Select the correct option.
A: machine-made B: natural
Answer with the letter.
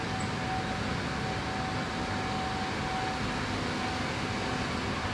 B